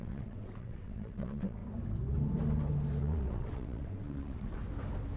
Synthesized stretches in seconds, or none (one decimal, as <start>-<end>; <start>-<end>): 0.0-1.6; 3.0-4.6